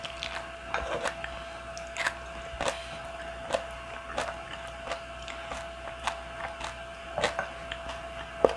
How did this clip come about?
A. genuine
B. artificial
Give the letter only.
A